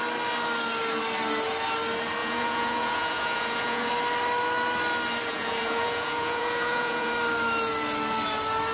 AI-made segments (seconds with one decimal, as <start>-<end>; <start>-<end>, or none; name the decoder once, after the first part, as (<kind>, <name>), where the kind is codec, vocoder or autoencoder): 2.2-3.9 (vocoder, Vocos); 5.3-7.1